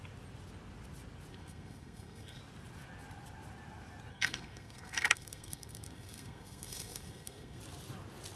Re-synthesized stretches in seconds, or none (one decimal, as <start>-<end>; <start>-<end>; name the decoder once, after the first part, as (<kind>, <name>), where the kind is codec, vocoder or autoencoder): 1.3-2.4 (codec, SNAC); 4.1-7.6